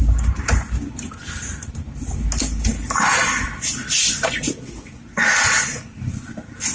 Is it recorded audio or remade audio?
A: recorded